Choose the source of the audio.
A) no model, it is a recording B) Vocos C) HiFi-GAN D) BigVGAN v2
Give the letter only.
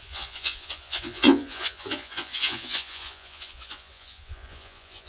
B